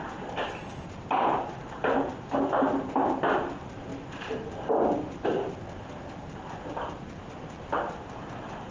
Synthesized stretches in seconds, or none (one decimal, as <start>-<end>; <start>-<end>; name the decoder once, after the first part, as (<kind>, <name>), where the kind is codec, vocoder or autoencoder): 3.9-5.5 (vocoder, BigVGAN v2); 7.2-7.7